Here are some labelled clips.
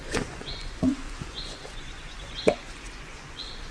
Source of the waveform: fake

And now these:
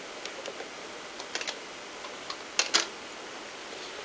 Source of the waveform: real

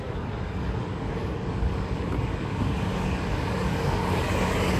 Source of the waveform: fake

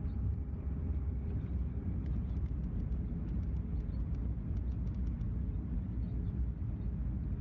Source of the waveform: real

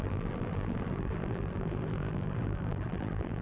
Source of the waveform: fake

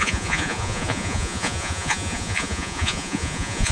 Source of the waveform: fake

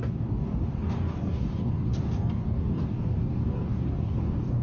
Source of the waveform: fake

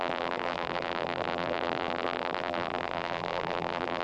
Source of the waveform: fake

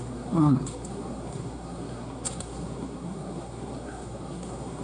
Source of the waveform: fake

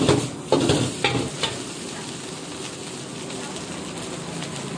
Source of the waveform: real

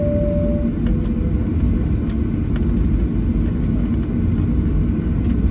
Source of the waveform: real